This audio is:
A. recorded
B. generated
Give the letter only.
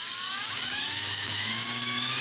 B